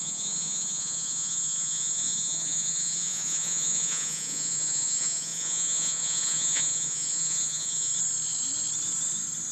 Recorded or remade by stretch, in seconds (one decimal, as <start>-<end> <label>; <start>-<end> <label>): 0.0-7.9 remade; 7.9-9.5 recorded